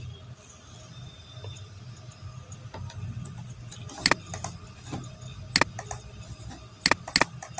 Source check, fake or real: real